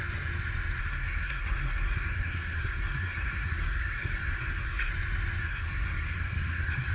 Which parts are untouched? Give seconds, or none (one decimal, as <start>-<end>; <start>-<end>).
0.0-0.8; 4.9-5.4